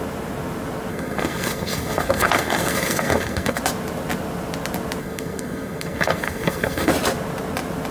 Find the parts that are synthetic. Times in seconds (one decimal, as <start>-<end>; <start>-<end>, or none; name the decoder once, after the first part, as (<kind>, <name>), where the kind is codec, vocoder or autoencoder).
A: 0.9-3.6 (codec, SNAC); 5.0-6.9